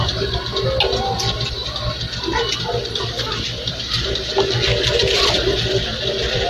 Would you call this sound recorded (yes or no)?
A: yes